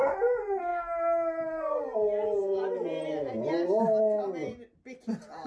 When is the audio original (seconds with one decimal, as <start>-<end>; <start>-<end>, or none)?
0.0-5.5